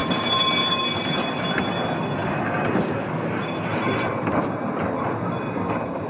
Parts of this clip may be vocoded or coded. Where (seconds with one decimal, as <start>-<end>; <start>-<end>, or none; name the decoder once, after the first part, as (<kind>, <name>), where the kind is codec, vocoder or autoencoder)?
2.2-6.1 (vocoder, BigVGAN v2)